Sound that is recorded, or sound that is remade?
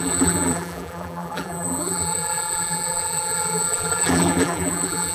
remade